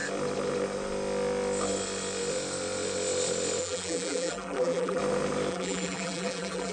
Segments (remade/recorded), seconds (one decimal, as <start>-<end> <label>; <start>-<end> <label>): 0.0-3.6 recorded; 3.6-5.0 remade; 5.0-5.5 recorded; 5.5-6.7 remade